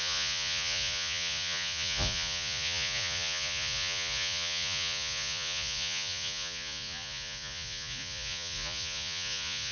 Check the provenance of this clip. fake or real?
fake